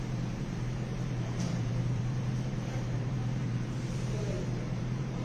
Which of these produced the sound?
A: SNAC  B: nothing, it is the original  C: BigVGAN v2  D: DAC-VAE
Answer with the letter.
C